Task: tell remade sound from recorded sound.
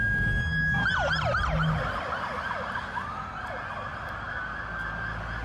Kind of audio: recorded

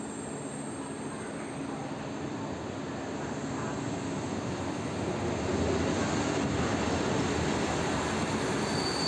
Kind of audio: recorded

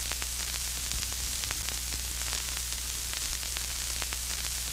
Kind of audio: recorded